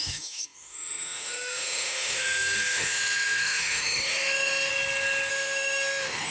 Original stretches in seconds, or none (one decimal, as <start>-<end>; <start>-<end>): 4.7-5.3